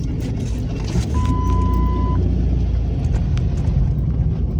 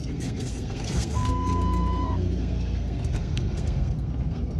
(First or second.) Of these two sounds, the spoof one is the second